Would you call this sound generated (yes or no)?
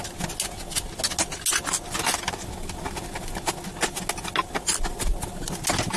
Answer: no